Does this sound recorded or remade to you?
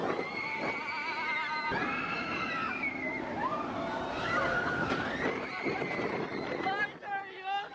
recorded